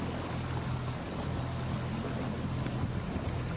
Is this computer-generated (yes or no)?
no